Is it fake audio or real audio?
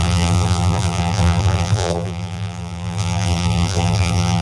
fake